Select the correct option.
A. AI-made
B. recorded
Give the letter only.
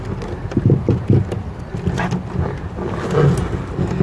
B